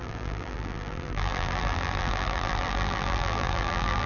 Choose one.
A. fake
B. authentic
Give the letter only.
A